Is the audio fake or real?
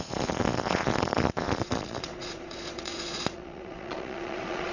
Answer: fake